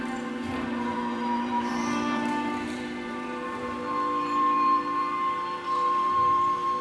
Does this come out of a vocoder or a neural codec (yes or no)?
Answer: yes